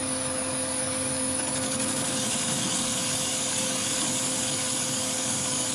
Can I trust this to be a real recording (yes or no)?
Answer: no